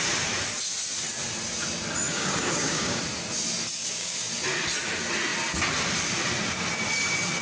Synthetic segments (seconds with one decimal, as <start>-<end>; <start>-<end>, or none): 2.1-3.0; 3.8-4.3